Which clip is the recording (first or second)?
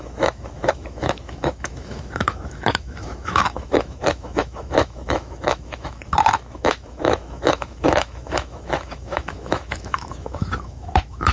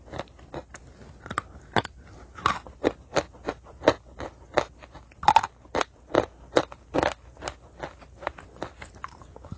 second